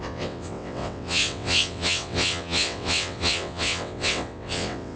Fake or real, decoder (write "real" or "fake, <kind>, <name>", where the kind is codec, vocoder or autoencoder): fake, vocoder, WaveNeXt